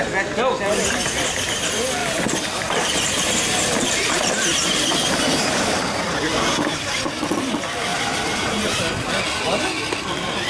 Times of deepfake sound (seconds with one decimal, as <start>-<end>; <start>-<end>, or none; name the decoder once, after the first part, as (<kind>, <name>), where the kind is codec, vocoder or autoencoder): 2.0-6.1 (vocoder, BigVGAN v2); 7.9-8.8